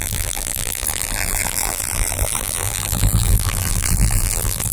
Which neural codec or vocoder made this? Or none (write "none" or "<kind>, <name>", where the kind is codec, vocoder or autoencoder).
vocoder, BigVGAN v2